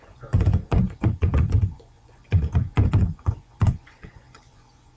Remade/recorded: remade